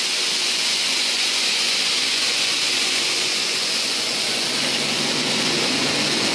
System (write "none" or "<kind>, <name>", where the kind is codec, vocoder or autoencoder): vocoder, Vocos